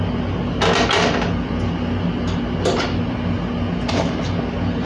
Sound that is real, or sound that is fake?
real